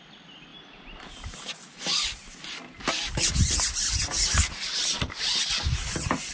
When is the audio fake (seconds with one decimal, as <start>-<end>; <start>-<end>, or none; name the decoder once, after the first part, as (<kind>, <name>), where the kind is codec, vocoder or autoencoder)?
none